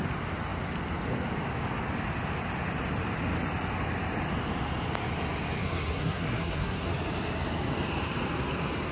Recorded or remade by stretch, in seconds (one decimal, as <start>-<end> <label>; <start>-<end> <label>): 0.0-5.6 recorded; 5.6-6.9 remade; 6.9-8.9 recorded